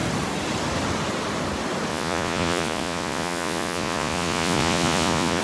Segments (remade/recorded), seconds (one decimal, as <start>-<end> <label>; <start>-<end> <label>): 0.0-1.9 recorded; 1.9-5.4 remade

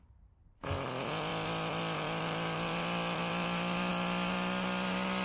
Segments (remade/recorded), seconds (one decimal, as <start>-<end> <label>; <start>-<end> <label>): 0.0-5.2 recorded

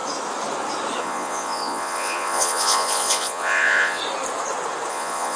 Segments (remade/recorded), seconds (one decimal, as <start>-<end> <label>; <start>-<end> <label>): 0.0-1.0 recorded; 1.0-4.0 remade; 4.0-4.9 recorded; 4.9-5.4 remade

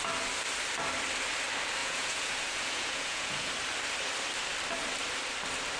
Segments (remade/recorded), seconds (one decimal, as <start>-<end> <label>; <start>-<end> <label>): 0.0-1.8 recorded; 1.8-3.5 remade; 3.5-5.8 recorded

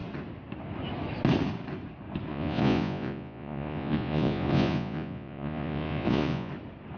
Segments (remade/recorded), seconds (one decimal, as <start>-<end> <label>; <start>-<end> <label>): 0.0-2.3 recorded; 2.3-6.5 remade; 6.5-7.0 recorded